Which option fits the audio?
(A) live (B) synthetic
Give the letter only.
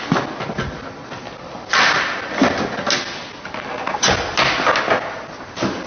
A